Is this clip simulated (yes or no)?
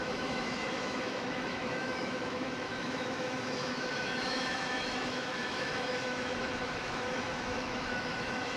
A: yes